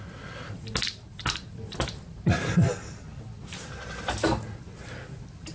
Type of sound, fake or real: real